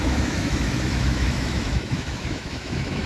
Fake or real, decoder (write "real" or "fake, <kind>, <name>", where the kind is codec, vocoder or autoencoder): fake, autoencoder, DAC-VAE